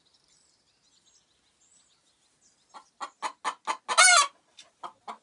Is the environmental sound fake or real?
real